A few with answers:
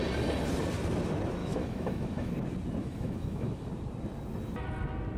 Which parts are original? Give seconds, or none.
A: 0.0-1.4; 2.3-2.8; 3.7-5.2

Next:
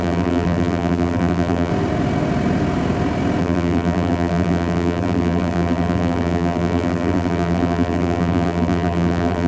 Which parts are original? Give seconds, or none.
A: 1.7-3.4

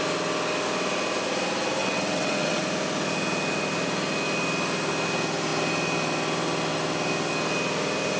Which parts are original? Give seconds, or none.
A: 0.0-1.8; 2.6-8.2

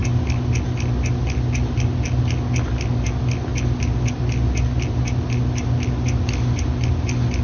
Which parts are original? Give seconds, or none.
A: 0.0-7.4

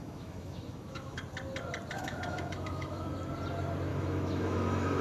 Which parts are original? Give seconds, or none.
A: 1.2-2.0; 3.1-3.9

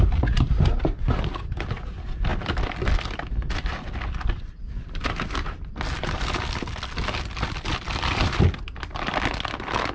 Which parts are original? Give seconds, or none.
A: 0.0-9.9

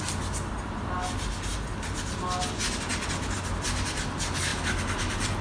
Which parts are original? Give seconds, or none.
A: 0.0-5.4

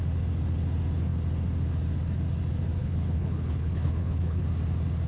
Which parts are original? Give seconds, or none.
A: 0.0-2.8; 4.4-5.1